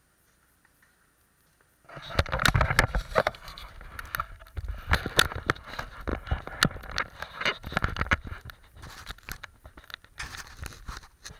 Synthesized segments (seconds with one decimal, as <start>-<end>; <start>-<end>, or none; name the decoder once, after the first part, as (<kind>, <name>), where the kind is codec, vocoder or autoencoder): 3.2-3.7 (codec, SNAC)